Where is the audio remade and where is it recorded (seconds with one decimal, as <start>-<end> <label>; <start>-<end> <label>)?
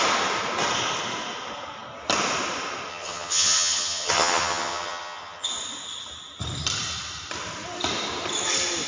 0.0-2.9 recorded; 2.9-5.5 remade; 5.5-8.9 recorded